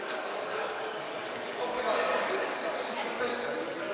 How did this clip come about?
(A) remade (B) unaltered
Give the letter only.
A